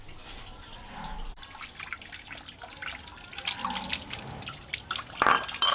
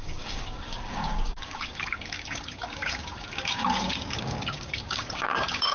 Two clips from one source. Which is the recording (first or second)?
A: first